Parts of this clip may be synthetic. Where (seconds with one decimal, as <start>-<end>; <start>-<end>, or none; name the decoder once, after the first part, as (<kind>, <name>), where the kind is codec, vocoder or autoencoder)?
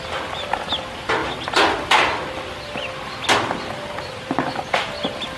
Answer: none